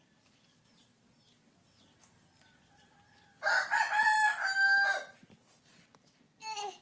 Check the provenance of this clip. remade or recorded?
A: recorded